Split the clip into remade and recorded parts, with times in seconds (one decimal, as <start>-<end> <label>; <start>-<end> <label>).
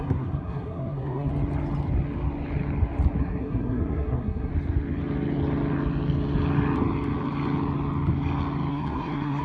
0.0-1.3 remade; 1.3-3.2 recorded; 3.2-4.5 remade; 4.5-8.7 recorded; 8.7-9.4 remade